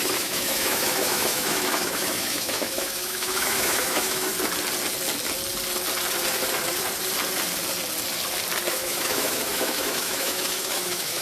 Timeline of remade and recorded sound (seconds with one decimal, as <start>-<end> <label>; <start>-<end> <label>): 0.0-4.3 remade; 4.3-8.7 recorded; 8.7-11.2 remade